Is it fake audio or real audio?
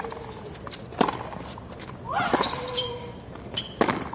real